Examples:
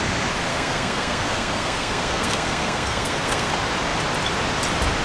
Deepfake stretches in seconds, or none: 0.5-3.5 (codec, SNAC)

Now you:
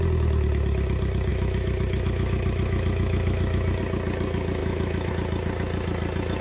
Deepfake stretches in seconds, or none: 1.3-3.8 (autoencoder, DAC-VAE); 4.6-5.1

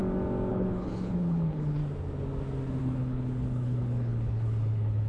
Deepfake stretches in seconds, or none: 0.5-1.8 (codec, HILCodec); 2.8-5.1

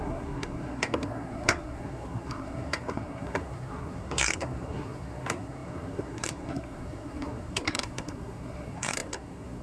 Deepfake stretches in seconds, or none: 0.0-9.6 (codec, SNAC)

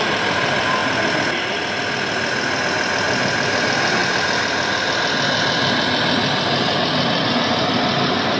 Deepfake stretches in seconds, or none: none

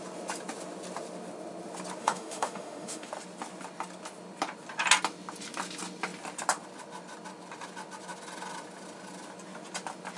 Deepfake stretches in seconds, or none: 2.0-3.1 (autoencoder, DAC-VAE)